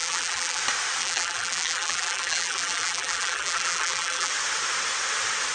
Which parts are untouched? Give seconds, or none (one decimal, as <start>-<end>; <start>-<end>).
0.6-1.0; 4.3-5.5